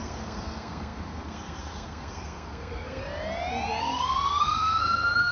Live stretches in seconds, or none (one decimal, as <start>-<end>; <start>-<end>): 3.0-3.8